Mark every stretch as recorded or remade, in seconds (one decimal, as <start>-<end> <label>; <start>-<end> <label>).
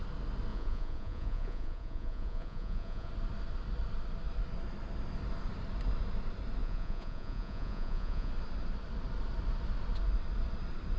0.0-0.5 recorded; 0.5-3.1 remade; 3.1-6.6 recorded; 6.6-8.3 remade; 8.3-11.0 recorded